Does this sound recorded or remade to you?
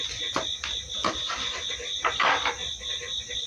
recorded